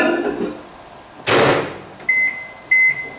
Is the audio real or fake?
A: real